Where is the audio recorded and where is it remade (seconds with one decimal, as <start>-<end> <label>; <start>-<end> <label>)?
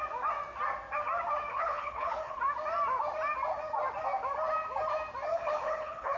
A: 0.0-1.5 recorded; 1.5-2.4 remade; 2.4-5.3 recorded; 5.3-6.2 remade